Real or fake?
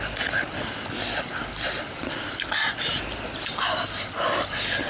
real